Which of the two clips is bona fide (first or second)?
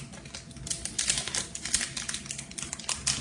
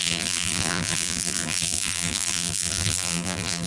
first